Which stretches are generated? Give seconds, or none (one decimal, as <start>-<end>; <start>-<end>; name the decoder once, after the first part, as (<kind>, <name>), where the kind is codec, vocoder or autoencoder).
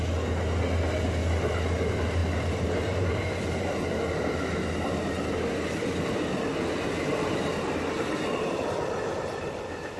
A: none